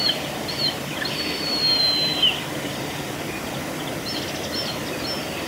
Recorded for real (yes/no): yes